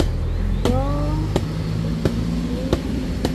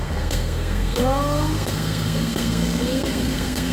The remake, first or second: second